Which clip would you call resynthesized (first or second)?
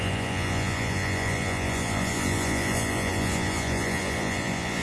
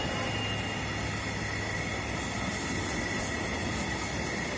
first